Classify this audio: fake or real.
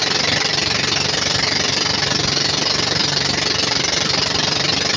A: fake